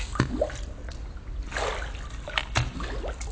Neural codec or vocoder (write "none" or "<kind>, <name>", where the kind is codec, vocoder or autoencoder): none